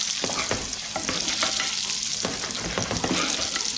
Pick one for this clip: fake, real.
real